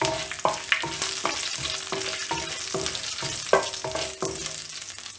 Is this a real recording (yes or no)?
yes